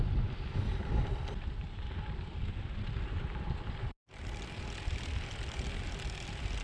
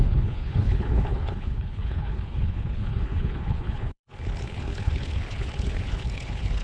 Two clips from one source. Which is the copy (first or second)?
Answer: second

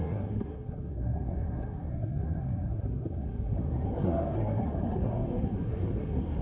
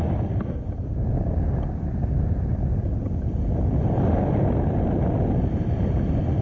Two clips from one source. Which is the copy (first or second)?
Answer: first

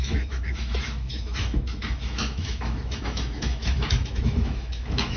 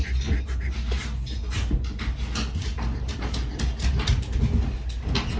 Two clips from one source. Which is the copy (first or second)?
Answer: first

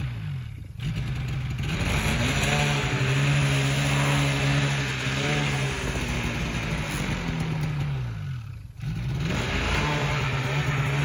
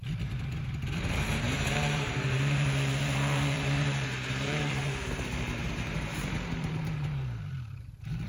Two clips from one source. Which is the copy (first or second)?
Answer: second